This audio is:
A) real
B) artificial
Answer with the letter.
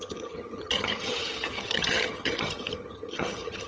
B